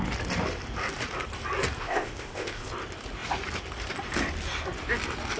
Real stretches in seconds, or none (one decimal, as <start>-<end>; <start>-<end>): 0.0-1.8; 2.7-5.4